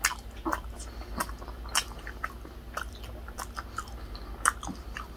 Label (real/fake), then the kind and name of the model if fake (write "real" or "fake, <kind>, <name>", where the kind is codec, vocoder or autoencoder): real